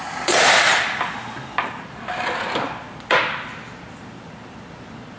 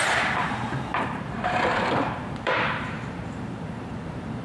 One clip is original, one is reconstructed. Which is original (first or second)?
first